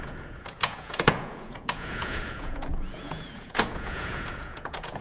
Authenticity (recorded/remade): remade